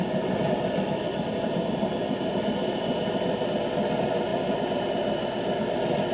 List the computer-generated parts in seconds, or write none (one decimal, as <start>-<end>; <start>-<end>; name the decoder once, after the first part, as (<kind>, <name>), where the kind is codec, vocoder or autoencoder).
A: none